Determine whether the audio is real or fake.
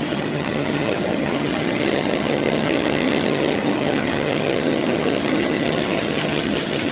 fake